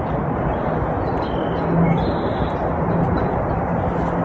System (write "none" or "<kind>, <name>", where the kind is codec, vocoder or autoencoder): none